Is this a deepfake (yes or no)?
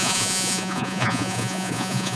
yes